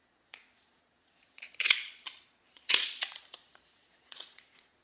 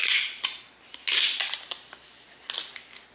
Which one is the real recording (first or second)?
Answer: second